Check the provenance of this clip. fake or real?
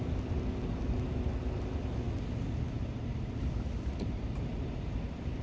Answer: real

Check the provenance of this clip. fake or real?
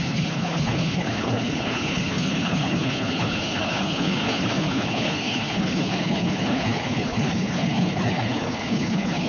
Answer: fake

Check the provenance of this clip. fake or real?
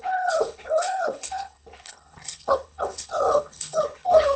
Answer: fake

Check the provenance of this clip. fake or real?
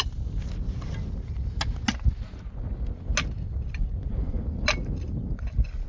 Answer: real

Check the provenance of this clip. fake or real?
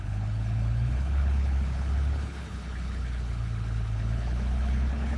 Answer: fake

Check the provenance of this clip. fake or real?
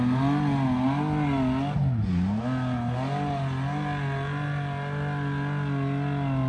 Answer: real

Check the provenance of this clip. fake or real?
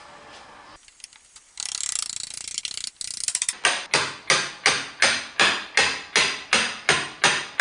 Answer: real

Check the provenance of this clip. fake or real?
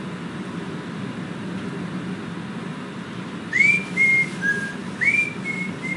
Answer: real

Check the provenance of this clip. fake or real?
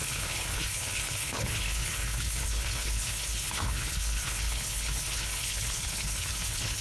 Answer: fake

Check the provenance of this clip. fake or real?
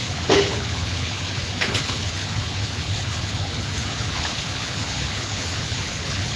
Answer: fake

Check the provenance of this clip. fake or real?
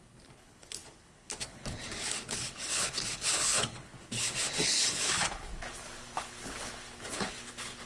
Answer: fake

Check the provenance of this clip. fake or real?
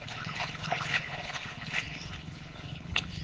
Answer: fake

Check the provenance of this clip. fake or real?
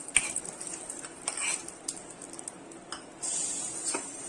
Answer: real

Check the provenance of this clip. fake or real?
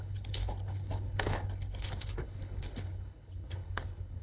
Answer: fake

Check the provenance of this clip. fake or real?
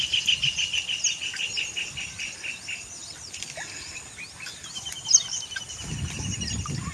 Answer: real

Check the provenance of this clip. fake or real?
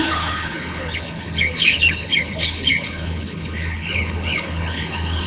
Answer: fake